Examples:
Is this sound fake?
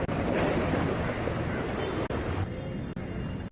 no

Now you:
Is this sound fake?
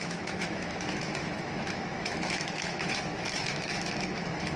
yes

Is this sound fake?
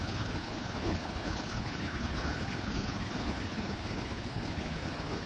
yes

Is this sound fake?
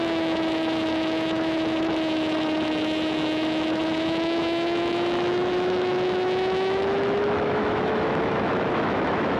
yes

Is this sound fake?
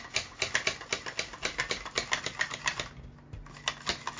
no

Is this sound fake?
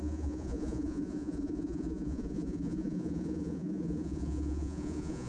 yes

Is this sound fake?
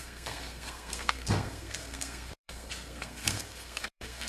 yes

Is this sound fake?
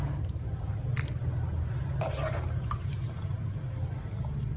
no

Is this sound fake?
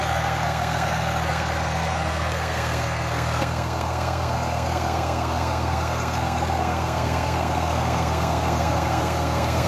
yes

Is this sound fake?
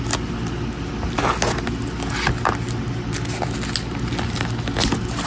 no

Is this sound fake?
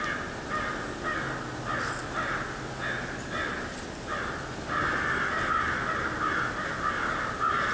no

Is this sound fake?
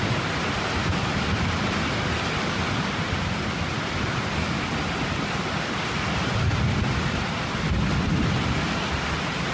no